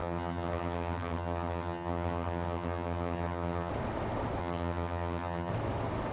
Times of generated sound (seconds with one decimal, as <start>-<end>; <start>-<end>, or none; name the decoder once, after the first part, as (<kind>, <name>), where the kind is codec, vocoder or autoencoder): 0.0-3.7 (vocoder, HiFi-GAN); 4.4-5.5